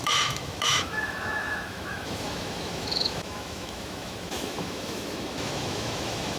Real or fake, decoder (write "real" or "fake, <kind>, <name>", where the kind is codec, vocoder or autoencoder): fake, autoencoder, DAC-VAE